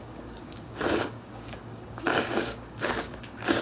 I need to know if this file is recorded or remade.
remade